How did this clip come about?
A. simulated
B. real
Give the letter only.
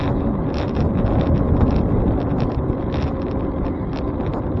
B